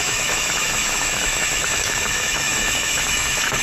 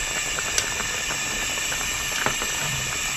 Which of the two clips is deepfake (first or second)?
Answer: first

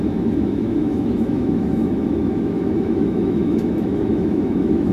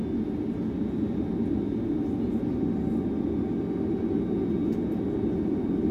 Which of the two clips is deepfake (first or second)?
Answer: first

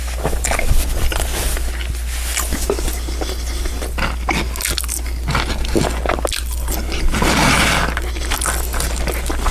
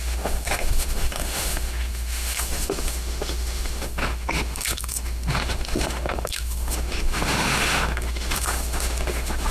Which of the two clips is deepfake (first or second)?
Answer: second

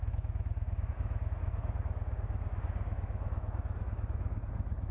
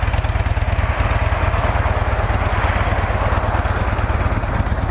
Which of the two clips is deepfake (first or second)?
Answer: first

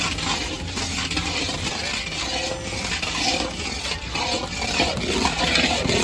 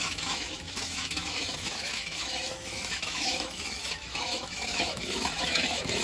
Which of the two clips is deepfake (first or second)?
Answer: second